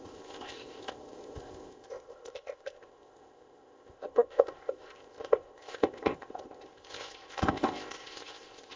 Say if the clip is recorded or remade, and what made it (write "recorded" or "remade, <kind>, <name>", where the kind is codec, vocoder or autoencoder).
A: remade, codec, ZipCodec